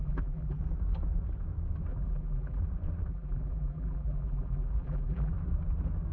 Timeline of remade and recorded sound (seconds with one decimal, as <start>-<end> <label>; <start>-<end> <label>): 0.0-0.6 remade; 0.6-1.9 recorded; 1.9-2.6 remade; 2.6-3.1 recorded; 3.1-5.3 remade; 5.3-6.1 recorded